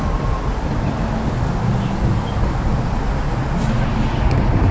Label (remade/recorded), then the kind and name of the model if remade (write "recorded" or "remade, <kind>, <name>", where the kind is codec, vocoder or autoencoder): recorded